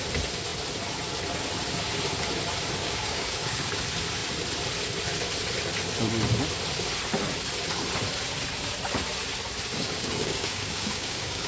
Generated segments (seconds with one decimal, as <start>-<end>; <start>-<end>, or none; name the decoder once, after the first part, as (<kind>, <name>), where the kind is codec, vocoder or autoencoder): 2.8-3.8 (codec, DAC); 9.7-11.5